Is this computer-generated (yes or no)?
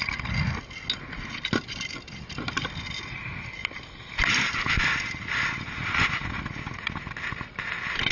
no